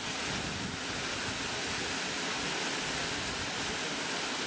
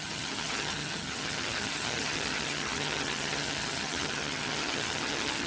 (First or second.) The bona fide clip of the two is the first